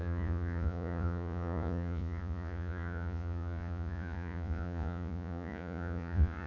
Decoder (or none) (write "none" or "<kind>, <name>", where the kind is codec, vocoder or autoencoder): vocoder, Vocos